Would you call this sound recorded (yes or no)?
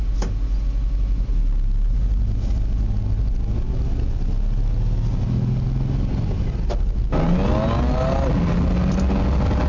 yes